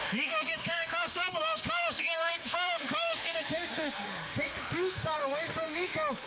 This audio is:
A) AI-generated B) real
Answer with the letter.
A